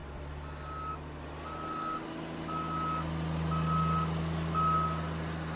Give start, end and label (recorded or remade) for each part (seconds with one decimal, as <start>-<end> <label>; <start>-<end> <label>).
0.0-5.6 recorded